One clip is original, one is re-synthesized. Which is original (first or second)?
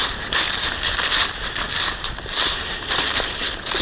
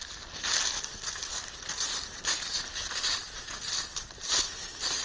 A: second